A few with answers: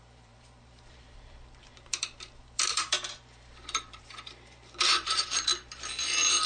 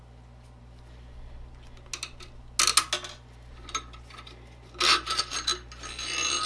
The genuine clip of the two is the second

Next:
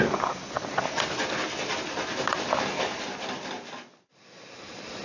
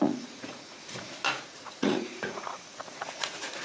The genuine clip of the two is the first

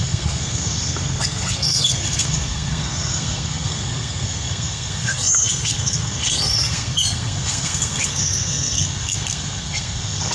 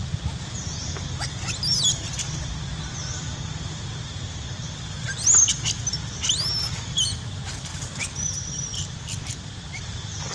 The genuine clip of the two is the second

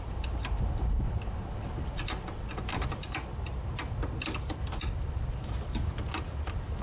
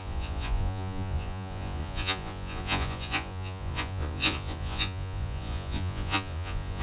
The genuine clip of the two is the first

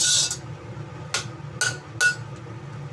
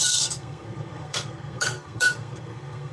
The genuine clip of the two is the first